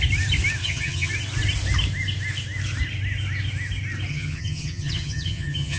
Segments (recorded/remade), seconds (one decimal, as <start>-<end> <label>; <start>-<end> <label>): 0.0-0.6 recorded; 0.6-1.1 remade; 1.1-4.1 recorded; 4.1-5.8 remade